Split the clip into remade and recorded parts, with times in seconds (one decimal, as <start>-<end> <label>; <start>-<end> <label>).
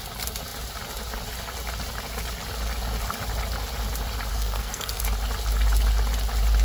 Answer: 0.0-4.3 recorded; 4.3-5.0 remade; 5.0-6.6 recorded